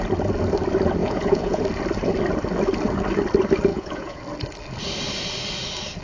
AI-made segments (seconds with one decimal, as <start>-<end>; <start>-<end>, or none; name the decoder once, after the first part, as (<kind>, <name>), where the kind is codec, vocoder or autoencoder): 1.0-1.6 (vocoder, Vocos); 3.7-4.2